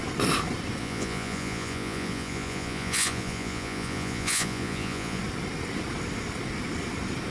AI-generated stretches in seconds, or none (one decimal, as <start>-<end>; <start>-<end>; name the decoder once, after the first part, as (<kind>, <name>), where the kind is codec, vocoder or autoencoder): 0.8-5.2 (vocoder, Vocos)